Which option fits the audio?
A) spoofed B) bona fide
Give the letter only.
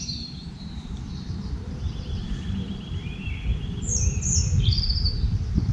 A